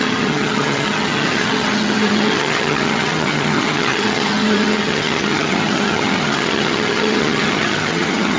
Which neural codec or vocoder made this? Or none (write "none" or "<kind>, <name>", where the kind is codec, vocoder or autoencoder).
vocoder, HiFi-GAN